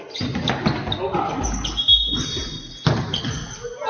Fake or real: real